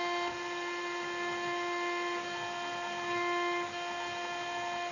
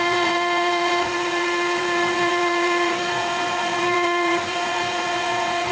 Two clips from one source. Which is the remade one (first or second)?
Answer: second